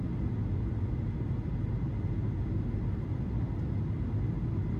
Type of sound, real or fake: real